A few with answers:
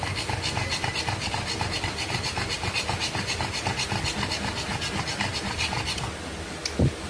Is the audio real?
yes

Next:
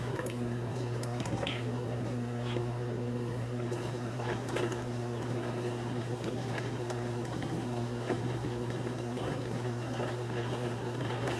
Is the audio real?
no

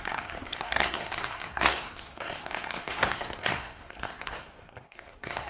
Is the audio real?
no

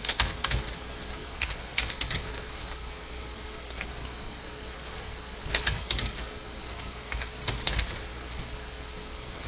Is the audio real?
no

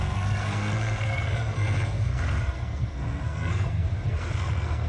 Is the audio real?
no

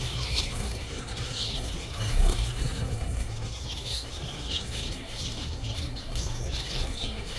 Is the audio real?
no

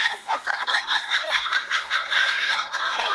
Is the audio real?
no